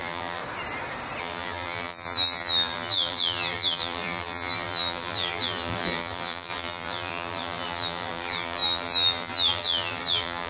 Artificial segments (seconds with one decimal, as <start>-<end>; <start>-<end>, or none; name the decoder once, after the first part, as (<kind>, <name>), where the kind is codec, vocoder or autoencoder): 0.0-0.4 (vocoder, BigVGAN v2); 1.2-10.5